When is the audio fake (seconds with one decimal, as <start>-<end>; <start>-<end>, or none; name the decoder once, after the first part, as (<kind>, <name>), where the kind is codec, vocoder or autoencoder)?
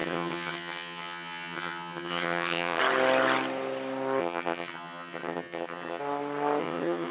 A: 0.0-2.8 (vocoder, HiFi-GAN); 4.2-6.0; 6.6-7.1